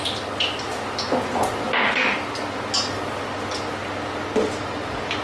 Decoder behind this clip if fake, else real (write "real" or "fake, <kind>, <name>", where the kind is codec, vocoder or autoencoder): real